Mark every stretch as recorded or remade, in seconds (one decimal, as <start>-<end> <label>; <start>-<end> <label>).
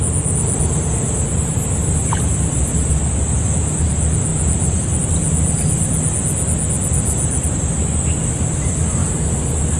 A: 0.0-9.8 recorded